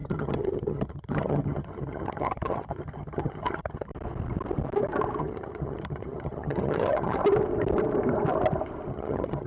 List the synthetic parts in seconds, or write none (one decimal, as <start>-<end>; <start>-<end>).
0.0-3.9; 5.2-7.2; 8.9-9.5